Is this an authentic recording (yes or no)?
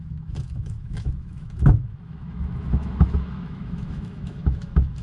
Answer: no